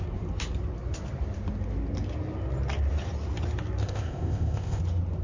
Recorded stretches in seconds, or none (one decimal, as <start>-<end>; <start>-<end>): 0.0-3.8; 4.8-5.2